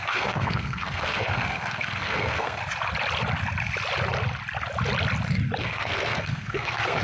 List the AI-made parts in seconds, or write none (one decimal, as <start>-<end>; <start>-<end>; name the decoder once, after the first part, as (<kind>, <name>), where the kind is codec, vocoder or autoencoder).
0.0-2.6 (codec, SNAC); 5.6-7.0